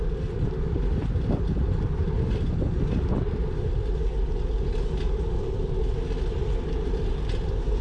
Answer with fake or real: real